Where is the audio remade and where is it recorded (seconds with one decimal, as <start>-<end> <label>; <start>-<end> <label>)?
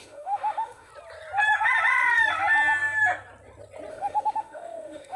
0.0-0.9 remade; 0.9-3.9 recorded; 3.9-5.2 remade